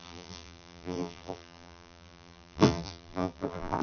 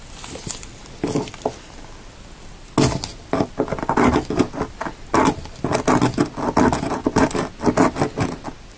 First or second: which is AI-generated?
first